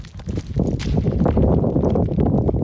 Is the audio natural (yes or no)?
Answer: yes